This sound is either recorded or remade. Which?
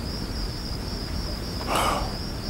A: remade